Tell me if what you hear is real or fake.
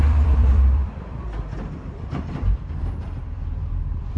fake